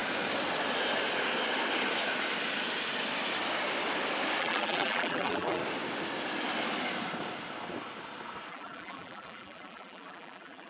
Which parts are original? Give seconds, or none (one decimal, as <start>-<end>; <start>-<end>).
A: 0.0-4.4; 5.6-8.5